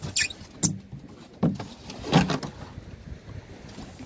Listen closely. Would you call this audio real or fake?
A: real